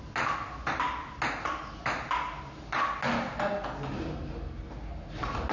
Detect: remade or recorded recorded